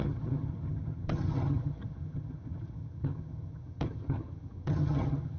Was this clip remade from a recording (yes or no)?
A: yes